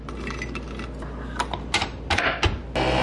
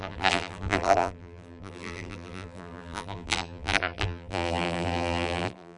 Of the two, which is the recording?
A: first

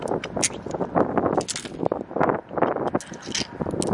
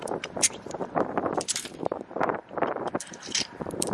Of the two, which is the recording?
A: first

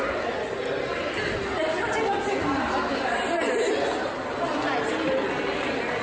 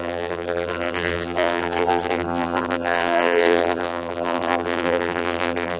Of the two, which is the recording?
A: first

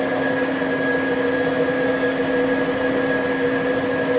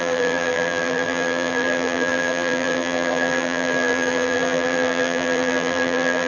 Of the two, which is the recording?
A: first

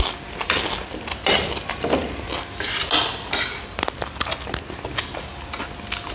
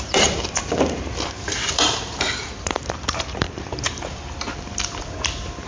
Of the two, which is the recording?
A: first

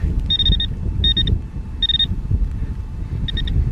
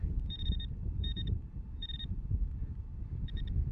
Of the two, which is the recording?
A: first